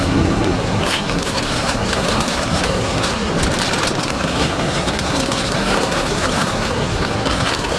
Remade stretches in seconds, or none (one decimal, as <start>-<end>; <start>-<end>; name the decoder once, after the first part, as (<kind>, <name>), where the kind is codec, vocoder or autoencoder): 0.0-3.3 (codec, SNAC); 4.0-7.8